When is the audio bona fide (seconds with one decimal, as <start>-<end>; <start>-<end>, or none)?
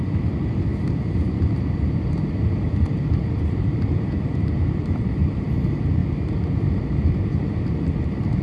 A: 6.0-6.7